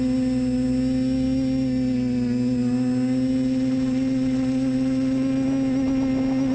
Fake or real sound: real